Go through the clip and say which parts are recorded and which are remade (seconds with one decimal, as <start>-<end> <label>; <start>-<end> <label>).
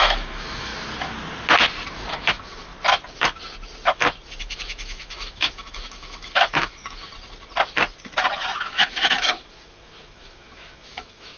0.0-0.7 remade; 0.7-2.1 recorded; 2.1-2.7 remade; 2.7-4.4 recorded; 4.4-7.1 remade; 7.1-8.6 recorded; 8.6-11.4 remade